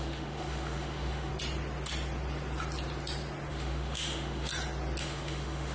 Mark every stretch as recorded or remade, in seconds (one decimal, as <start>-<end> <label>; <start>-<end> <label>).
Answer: 0.0-1.3 remade; 1.3-3.5 recorded; 3.5-4.5 remade; 4.5-5.0 recorded; 5.0-5.7 remade